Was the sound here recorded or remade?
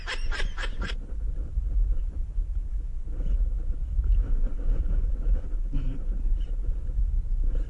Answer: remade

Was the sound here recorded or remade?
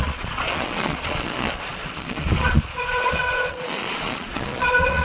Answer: remade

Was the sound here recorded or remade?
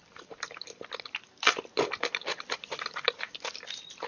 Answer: remade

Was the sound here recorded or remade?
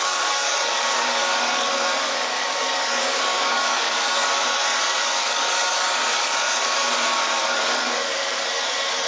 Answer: remade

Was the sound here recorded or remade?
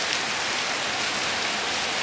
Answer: recorded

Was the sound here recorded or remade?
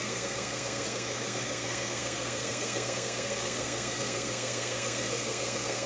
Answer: remade